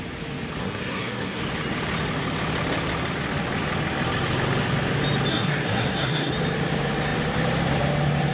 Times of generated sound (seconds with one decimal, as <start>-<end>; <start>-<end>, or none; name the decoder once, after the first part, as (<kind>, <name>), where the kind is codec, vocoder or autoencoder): 0.6-1.4 (codec, SNAC); 5.3-6.3